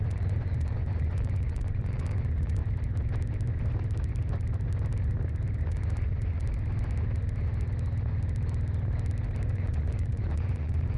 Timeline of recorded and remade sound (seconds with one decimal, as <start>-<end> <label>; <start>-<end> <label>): 0.0-2.6 remade; 2.6-5.6 recorded; 5.6-6.4 remade; 6.4-9.5 recorded; 9.5-11.0 remade